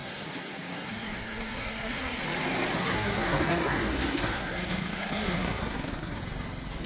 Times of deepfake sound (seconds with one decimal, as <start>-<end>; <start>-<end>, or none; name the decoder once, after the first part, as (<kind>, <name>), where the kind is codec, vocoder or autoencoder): 0.0-2.2 (codec, SNAC); 2.8-6.2